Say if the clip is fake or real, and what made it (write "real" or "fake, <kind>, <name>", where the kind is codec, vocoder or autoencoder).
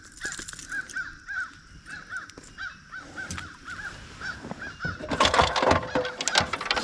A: real